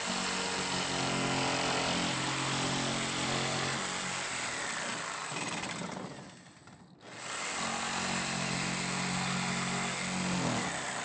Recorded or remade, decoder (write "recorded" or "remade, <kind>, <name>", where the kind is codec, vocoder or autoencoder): recorded